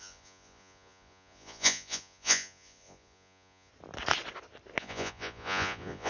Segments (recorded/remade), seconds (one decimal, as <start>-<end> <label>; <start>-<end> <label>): 0.0-3.7 remade; 3.7-4.8 recorded; 4.8-6.1 remade